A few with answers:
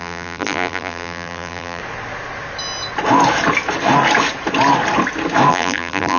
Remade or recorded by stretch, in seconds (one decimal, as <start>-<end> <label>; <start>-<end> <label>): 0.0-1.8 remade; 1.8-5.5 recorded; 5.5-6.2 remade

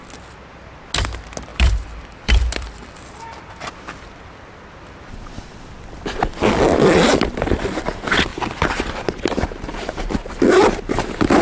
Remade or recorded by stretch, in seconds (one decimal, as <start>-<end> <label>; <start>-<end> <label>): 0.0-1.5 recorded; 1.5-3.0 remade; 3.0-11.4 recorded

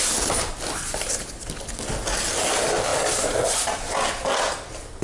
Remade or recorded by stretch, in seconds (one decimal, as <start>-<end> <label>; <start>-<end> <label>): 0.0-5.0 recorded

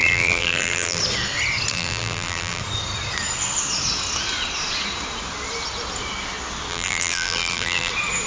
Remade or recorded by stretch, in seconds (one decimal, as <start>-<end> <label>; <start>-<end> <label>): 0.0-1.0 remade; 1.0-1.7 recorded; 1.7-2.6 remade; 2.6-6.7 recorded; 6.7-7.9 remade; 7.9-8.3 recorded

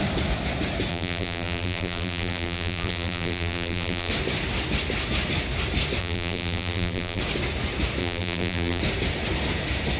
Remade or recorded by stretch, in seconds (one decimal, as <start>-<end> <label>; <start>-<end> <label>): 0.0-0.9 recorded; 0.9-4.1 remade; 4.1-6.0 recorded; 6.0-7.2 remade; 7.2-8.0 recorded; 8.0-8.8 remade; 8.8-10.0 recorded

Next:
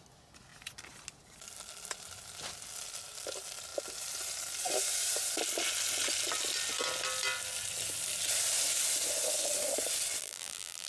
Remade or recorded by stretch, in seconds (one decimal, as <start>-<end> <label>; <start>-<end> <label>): 0.0-10.2 recorded; 10.2-10.9 remade

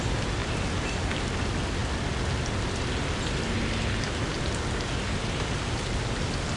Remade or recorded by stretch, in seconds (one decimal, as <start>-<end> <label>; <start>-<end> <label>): 0.0-0.4 recorded; 0.4-1.2 remade; 1.2-6.6 recorded

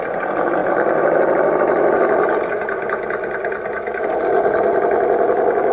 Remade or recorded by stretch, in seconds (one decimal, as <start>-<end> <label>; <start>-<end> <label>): 0.0-0.6 recorded; 0.6-4.0 remade; 4.0-5.7 recorded